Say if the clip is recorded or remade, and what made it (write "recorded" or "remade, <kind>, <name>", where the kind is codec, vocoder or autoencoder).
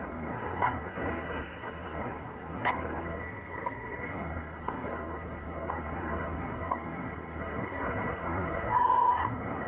remade, codec, SNAC